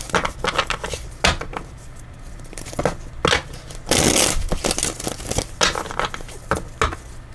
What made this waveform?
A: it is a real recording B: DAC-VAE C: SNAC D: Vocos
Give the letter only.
A